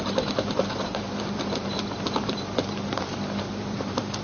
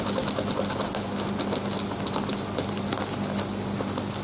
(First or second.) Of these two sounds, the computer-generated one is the first